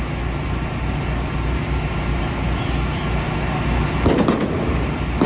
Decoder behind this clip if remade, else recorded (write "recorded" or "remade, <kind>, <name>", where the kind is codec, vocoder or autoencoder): recorded